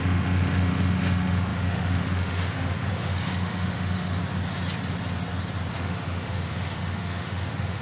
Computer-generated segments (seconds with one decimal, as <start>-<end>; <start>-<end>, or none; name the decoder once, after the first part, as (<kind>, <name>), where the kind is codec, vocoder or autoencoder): 0.0-4.2 (autoencoder, DAC-VAE); 5.7-7.8